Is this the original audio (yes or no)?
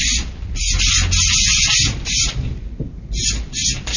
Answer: yes